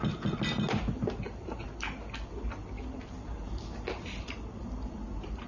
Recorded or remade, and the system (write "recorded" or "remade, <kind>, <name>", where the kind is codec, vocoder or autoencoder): recorded